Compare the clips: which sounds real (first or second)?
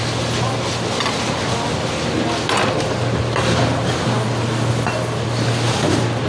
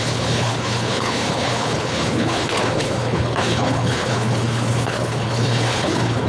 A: first